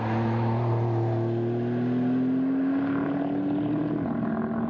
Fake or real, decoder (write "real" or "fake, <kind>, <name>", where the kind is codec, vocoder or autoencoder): real